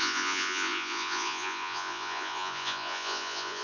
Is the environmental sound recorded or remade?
remade